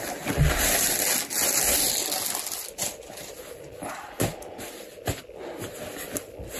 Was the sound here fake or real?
real